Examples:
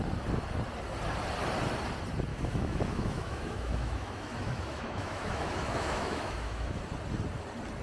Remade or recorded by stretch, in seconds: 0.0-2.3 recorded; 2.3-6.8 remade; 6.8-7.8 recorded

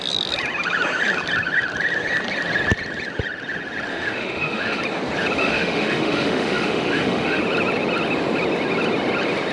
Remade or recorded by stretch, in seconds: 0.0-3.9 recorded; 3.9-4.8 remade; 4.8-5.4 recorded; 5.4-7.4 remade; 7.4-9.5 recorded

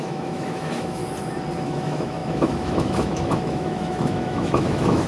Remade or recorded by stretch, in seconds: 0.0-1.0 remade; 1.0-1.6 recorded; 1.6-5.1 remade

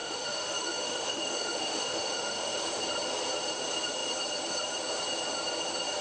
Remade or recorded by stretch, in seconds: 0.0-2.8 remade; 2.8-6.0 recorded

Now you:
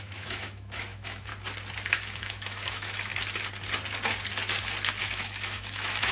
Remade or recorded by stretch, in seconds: 0.0-1.3 remade; 1.3-1.9 recorded; 1.9-3.1 remade; 3.1-5.0 recorded; 5.0-6.1 remade